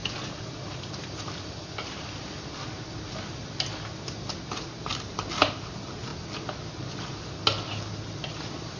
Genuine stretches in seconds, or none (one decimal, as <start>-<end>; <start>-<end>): 0.0-4.4; 6.1-8.3